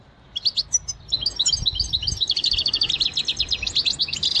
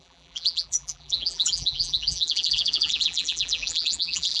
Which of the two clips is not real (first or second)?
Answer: second